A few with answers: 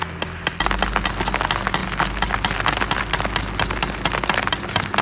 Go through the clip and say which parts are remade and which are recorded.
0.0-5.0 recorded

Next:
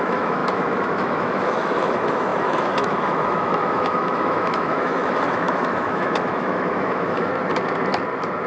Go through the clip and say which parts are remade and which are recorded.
0.0-7.3 remade; 7.3-8.5 recorded